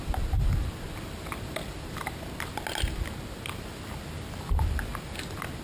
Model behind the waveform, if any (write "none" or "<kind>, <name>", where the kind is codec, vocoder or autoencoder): none